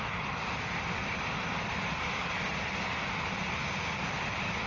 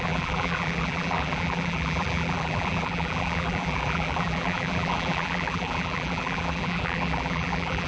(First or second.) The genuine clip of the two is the first